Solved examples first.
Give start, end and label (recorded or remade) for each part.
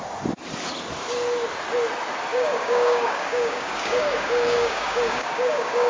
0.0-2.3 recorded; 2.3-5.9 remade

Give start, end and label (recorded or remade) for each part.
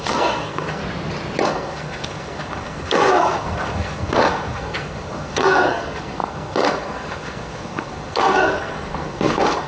0.0-0.8 remade; 0.8-1.4 recorded; 1.4-9.7 remade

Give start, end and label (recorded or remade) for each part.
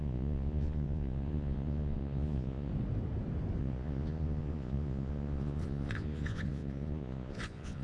0.0-2.7 remade; 2.7-3.6 recorded; 3.6-7.8 remade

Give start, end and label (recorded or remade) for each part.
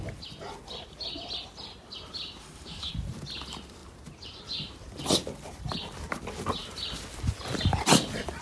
0.0-2.4 recorded; 2.4-2.9 remade; 2.9-8.4 recorded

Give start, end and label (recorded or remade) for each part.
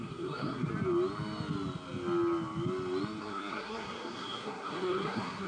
0.0-0.7 remade; 0.7-3.2 recorded; 3.2-5.5 remade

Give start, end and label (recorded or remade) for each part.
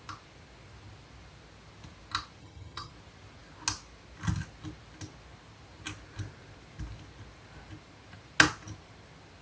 0.0-2.4 recorded; 2.4-2.9 remade; 2.9-9.4 recorded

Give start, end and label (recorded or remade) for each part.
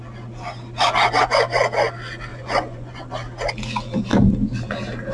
0.0-2.3 recorded; 2.3-3.0 remade; 3.0-5.1 recorded